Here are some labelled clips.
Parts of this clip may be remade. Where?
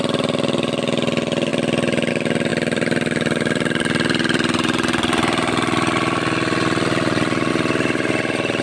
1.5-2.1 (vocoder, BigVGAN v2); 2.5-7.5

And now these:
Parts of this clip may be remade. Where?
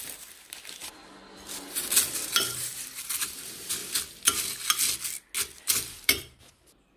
0.0-3.8 (vocoder, BigVGAN v2); 5.6-7.0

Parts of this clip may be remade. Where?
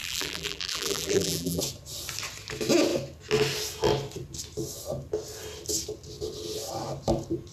0.0-1.6 (vocoder, BigVGAN v2)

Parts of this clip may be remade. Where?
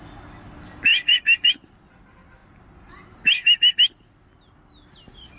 0.9-1.7 (vocoder, BigVGAN v2)